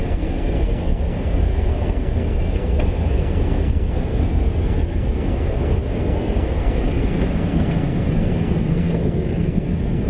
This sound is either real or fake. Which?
fake